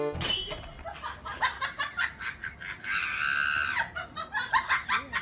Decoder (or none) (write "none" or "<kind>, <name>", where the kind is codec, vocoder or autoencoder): none